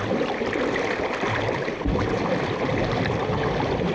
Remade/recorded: remade